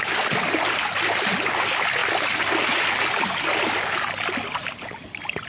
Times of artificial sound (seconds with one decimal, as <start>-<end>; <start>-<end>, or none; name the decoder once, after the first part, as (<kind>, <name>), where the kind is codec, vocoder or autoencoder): none